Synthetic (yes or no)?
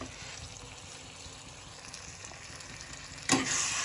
no